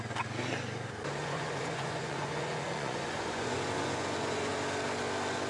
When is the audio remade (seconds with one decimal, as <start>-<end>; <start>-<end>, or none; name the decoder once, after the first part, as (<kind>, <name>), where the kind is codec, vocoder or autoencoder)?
1.2-4.5 (vocoder, Vocos)